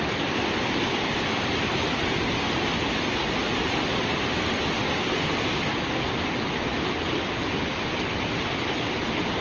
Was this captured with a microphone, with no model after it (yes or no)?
yes